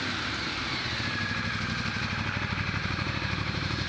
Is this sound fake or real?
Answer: fake